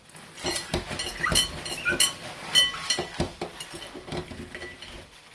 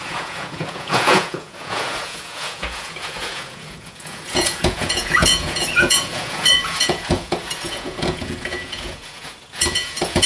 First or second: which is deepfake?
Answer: second